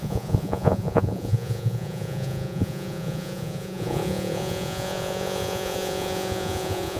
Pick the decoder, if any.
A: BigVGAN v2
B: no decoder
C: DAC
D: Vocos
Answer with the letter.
D